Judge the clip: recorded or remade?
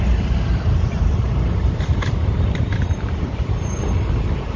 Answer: remade